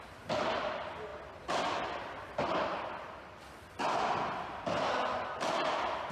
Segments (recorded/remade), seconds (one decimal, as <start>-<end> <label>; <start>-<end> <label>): 0.0-6.1 recorded